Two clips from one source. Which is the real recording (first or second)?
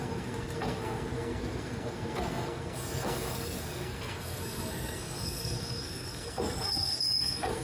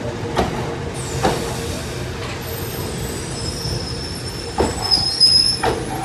second